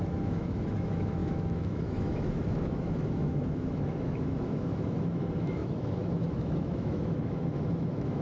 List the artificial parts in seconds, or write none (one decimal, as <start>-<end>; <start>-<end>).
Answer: 0.0-8.2